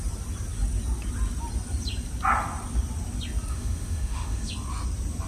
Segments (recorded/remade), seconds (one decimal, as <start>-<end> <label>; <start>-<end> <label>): 0.0-3.5 recorded; 3.5-4.5 remade; 4.5-5.3 recorded